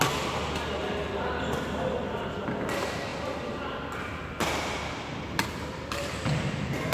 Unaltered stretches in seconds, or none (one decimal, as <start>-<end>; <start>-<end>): 0.0-6.9